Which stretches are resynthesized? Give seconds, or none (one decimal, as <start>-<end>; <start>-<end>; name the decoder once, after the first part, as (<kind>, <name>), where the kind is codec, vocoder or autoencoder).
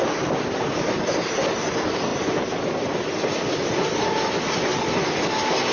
none